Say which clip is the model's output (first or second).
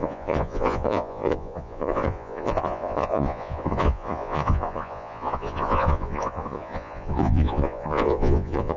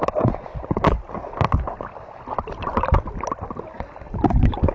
first